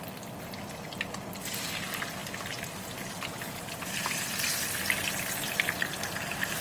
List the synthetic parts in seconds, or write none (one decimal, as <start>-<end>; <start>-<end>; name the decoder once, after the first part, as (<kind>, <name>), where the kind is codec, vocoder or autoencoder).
none